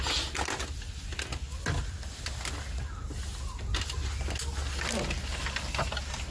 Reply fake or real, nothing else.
real